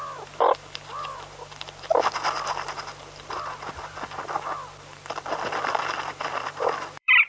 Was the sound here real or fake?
fake